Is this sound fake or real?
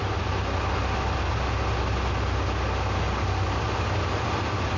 real